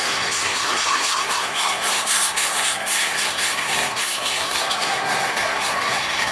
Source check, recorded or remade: remade